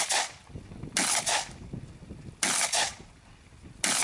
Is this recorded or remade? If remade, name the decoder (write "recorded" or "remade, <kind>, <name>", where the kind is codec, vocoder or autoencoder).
recorded